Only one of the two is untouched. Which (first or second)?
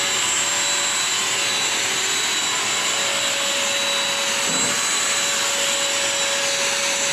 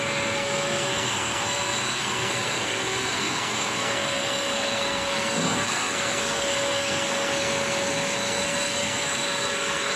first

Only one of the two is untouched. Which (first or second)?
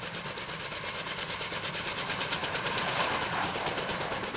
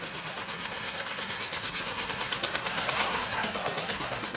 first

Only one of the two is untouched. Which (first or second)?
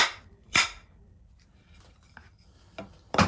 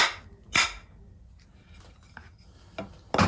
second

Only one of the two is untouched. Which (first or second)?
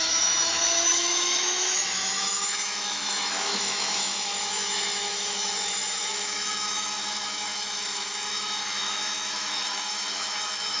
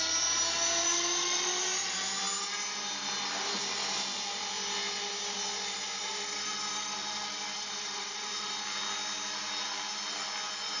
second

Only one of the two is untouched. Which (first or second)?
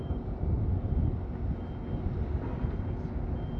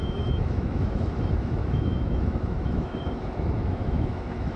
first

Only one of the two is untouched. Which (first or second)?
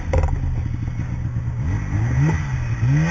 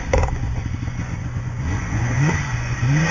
first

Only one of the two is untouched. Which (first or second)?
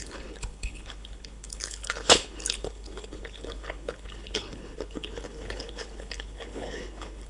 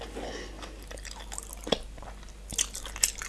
second